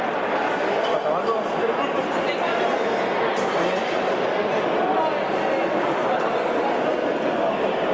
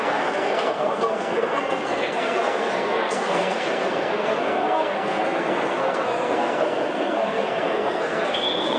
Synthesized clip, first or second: second